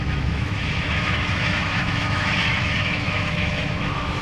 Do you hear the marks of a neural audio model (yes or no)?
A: yes